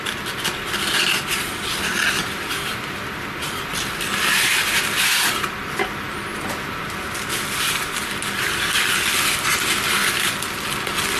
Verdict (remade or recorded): recorded